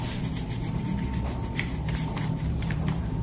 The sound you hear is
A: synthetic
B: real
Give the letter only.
A